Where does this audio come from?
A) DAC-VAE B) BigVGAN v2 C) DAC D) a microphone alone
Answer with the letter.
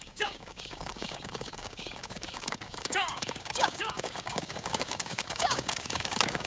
C